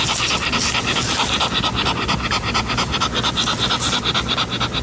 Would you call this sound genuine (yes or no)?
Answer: yes